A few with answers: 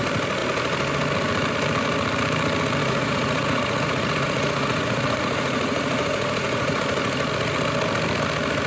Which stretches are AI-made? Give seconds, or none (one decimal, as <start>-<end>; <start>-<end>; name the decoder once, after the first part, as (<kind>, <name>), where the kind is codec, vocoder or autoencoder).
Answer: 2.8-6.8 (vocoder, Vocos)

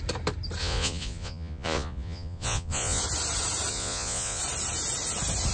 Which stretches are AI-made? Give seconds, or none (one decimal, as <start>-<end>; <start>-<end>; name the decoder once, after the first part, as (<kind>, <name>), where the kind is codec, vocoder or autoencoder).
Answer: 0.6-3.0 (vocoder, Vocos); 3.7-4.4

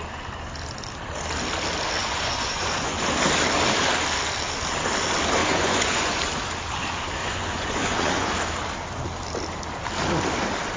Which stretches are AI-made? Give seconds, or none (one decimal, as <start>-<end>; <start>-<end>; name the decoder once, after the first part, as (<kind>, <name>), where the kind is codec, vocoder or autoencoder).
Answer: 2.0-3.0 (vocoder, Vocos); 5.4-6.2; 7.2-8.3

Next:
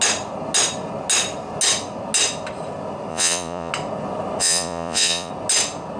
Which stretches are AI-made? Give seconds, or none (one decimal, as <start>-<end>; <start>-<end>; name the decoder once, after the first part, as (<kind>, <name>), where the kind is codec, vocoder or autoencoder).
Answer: 3.1-3.7 (vocoder, Vocos); 4.4-5.3